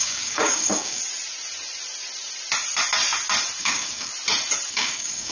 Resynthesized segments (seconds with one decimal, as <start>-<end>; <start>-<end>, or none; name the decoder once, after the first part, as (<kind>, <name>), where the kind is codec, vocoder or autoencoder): 0.0-1.0 (codec, DAC); 3.6-4.1; 4.7-5.3